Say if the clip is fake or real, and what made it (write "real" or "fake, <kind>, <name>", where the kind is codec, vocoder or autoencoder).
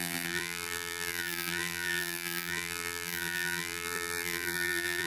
fake, vocoder, BigVGAN v2